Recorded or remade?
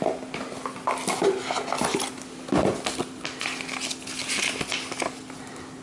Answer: recorded